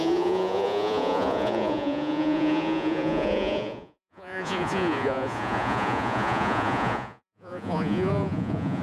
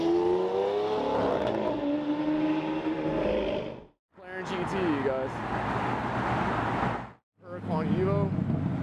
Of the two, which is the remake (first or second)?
first